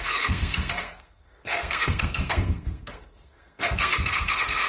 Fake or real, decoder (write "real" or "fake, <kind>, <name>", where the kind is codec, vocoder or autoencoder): fake, codec, SNAC